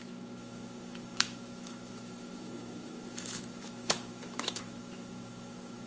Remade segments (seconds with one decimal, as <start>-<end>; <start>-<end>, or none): 0.0-5.9